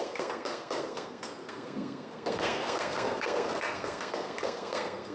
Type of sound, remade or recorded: remade